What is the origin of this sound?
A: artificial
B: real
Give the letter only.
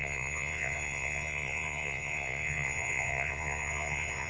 A